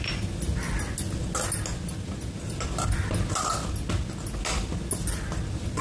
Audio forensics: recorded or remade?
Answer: recorded